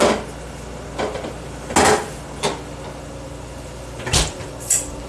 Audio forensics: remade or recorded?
recorded